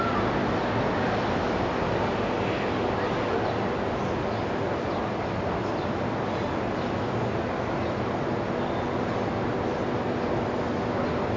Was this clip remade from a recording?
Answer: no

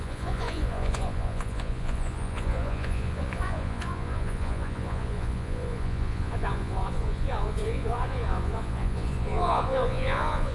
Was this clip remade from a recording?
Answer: yes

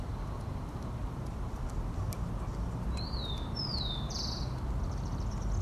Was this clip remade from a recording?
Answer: no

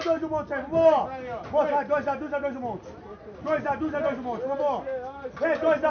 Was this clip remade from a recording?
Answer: no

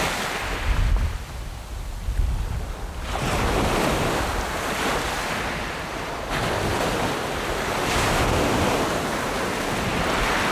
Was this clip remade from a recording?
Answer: no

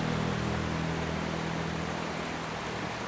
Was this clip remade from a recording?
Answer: no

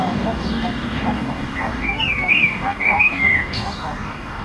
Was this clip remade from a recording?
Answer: yes